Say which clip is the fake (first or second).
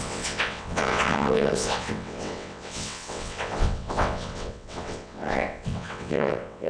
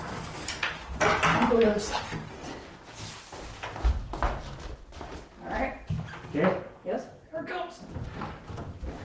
first